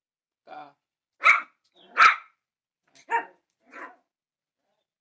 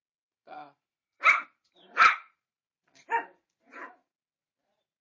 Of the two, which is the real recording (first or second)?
first